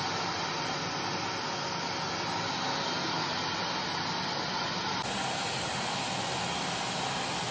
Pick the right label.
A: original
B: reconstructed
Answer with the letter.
A